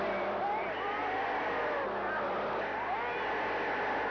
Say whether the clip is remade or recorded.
remade